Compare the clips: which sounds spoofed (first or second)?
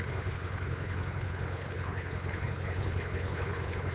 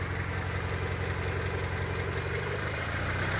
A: first